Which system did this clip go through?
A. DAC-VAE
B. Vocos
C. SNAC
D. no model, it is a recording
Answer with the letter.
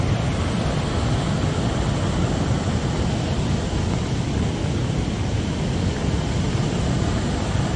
D